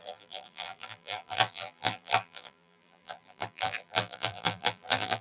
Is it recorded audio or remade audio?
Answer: remade